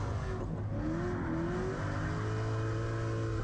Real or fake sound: real